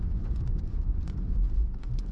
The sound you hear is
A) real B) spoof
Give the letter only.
B